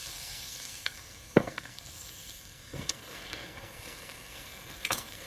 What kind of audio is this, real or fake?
fake